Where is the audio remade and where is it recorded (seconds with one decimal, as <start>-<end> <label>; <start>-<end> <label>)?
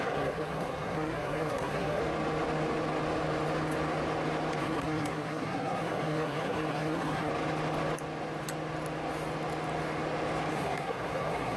0.0-2.0 remade; 2.0-4.6 recorded; 4.6-7.3 remade; 7.3-10.5 recorded; 10.5-11.6 remade